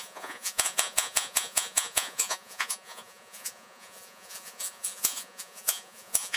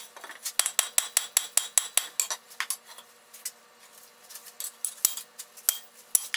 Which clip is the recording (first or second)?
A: second